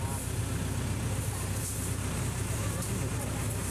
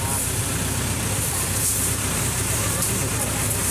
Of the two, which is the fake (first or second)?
second